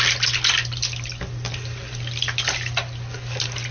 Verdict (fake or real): real